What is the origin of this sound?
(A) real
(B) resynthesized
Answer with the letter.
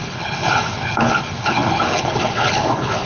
B